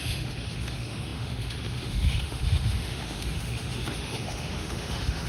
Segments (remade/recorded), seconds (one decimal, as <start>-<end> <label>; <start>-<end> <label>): 0.0-5.3 remade